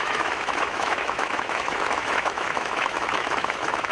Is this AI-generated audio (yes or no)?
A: yes